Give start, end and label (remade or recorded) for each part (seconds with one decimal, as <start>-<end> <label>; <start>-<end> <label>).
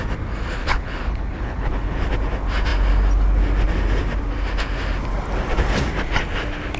0.0-0.6 recorded; 0.6-2.1 remade; 2.1-6.8 recorded